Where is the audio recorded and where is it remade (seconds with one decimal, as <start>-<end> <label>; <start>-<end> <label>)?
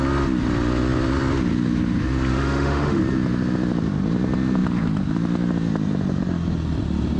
0.0-2.3 recorded; 2.3-3.0 remade; 3.0-7.2 recorded